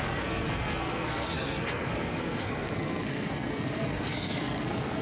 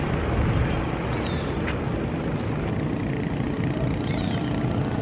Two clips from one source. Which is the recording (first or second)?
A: second